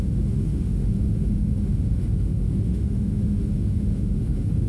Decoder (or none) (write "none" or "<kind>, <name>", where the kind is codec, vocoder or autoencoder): autoencoder, DAC-VAE